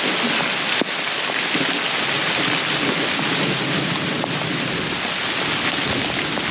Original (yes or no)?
yes